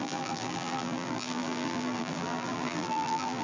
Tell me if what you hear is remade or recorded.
remade